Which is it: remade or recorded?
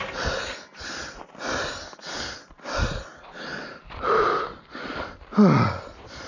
recorded